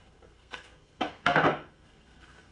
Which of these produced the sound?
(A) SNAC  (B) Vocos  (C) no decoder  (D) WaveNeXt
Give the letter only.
A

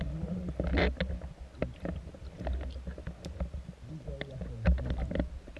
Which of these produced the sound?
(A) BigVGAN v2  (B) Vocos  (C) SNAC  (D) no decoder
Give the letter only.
D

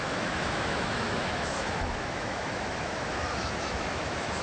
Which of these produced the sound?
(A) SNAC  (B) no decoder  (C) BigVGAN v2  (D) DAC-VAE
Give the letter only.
D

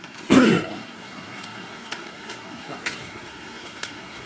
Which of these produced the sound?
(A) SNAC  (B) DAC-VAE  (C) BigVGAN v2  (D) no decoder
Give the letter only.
A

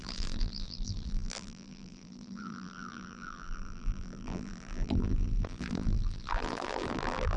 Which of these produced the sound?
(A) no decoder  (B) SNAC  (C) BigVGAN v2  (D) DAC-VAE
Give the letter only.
C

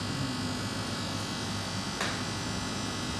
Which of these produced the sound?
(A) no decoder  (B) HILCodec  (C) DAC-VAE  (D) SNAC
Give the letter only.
A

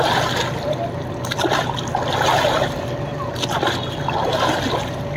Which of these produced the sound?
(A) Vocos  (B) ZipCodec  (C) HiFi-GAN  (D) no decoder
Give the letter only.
D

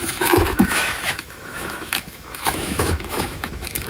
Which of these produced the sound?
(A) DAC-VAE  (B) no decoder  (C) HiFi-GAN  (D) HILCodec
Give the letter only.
A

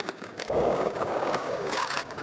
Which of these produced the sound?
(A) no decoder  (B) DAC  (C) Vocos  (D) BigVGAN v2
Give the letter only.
B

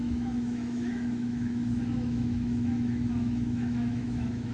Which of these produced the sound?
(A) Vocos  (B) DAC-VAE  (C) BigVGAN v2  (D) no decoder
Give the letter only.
B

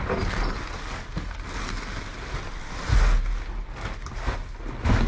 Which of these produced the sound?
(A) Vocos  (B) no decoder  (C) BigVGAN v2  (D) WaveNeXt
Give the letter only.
B